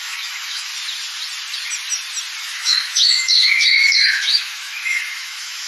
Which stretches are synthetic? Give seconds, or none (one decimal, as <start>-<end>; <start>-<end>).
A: 0.0-0.7; 2.4-5.7